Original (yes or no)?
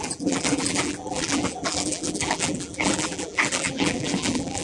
no